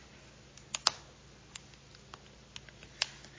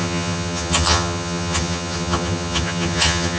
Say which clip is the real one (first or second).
first